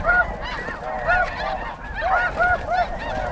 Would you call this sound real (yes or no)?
yes